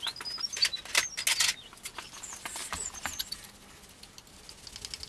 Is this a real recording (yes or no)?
yes